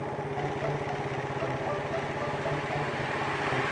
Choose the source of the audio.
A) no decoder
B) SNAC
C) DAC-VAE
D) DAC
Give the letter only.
A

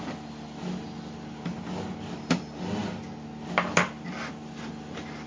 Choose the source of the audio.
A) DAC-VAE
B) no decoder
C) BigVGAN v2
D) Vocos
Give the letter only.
B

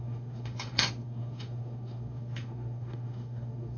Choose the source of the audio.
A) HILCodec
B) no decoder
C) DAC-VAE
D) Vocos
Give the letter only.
C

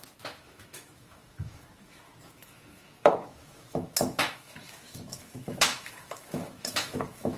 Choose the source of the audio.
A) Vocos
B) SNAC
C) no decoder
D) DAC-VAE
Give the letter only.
D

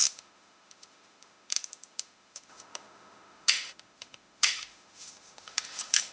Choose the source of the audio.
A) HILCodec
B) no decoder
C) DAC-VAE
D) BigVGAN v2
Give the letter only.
C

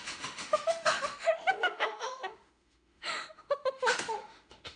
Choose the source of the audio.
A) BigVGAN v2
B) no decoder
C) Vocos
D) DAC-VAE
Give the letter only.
D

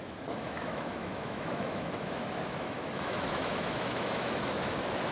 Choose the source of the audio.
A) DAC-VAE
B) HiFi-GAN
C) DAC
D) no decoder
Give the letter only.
A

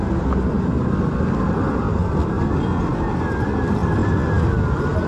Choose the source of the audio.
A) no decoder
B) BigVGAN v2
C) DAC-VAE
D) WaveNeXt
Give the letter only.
A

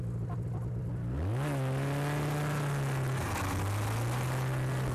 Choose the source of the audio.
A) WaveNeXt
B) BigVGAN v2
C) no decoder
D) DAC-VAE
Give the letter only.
C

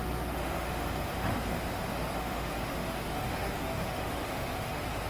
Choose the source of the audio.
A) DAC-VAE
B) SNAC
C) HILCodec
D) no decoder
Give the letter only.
A